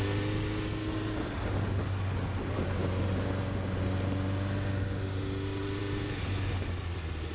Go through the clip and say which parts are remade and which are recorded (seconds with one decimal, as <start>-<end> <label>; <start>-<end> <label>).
0.0-7.3 recorded